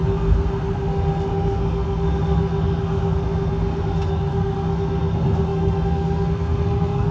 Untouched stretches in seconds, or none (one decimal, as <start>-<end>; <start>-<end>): none